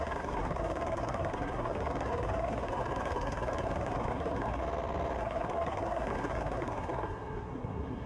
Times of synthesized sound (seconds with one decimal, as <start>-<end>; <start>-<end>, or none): 0.0-4.6; 5.2-8.1